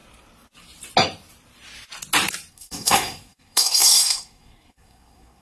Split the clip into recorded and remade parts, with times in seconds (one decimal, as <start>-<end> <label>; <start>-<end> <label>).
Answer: 0.0-2.5 recorded; 2.5-5.4 remade